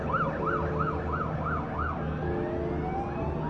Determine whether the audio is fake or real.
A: real